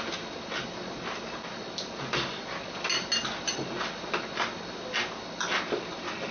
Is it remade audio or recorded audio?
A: recorded